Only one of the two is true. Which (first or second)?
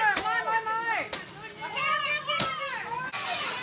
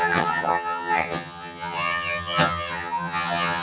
first